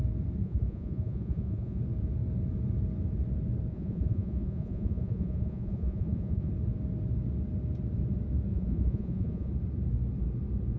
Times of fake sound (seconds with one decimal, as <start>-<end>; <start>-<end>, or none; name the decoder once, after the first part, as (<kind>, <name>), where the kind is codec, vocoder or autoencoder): 0.4-1.8 (vocoder, Vocos); 3.7-6.5; 8.5-9.5